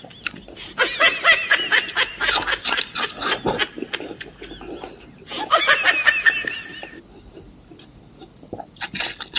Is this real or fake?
real